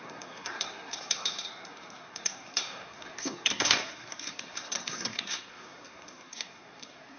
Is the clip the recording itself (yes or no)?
no